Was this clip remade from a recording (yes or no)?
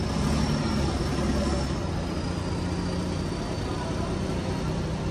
no